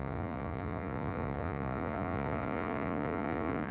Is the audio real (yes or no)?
no